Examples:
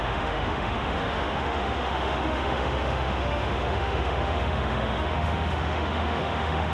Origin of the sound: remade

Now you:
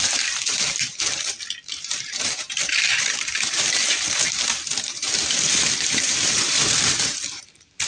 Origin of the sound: remade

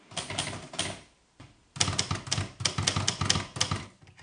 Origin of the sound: recorded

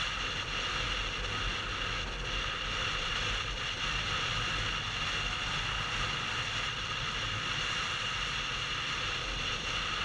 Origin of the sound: recorded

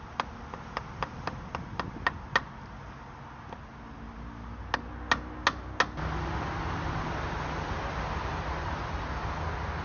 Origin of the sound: recorded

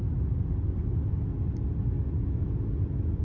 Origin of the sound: recorded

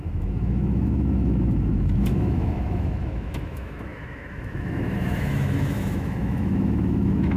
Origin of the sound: remade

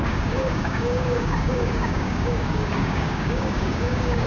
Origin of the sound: remade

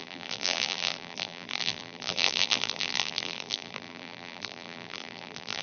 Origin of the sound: remade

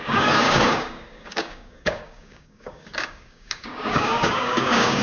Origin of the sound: remade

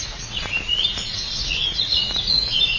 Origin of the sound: remade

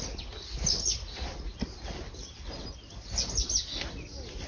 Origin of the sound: recorded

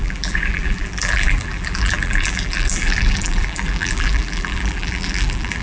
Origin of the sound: remade